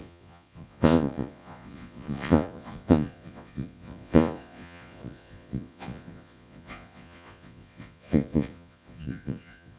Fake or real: fake